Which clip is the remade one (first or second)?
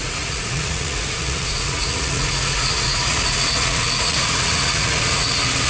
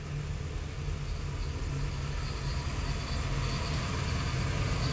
first